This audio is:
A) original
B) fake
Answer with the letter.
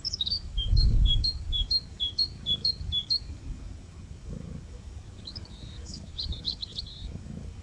B